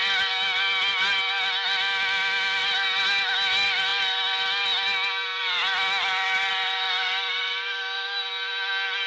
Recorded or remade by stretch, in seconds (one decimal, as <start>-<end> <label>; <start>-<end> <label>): 0.0-9.1 recorded